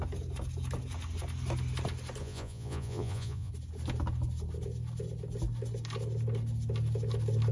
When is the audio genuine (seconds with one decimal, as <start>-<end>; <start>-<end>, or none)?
0.0-2.2; 3.5-7.5